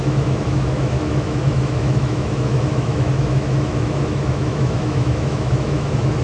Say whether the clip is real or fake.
fake